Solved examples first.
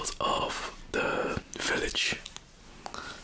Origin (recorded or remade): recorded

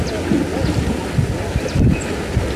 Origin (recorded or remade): recorded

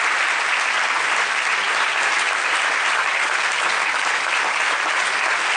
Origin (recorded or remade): recorded